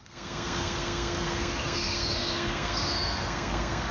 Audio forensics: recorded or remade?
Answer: remade